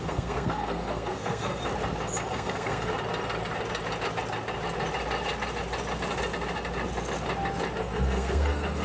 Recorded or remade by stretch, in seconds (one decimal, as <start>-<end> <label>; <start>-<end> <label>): 0.0-1.6 remade; 1.6-2.3 recorded; 2.3-2.9 remade; 2.9-7.8 recorded; 7.8-8.8 remade